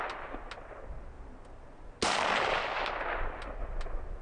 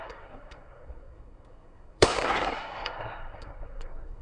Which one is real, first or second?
first